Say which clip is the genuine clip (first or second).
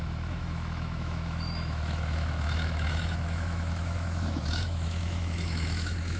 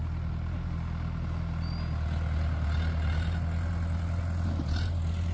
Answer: second